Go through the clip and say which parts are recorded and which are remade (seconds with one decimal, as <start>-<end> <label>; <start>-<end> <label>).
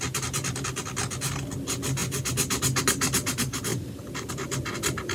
0.0-3.7 recorded; 3.7-4.3 remade; 4.3-5.1 recorded